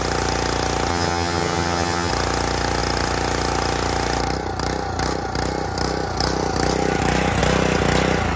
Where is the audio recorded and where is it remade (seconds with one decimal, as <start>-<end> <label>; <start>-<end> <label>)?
0.0-0.9 recorded; 0.9-2.1 remade; 2.1-8.4 recorded